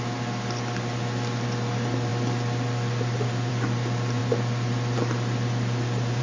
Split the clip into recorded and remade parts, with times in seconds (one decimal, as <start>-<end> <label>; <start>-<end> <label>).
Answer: 0.0-6.2 recorded